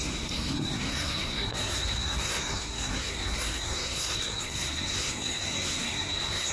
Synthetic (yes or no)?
yes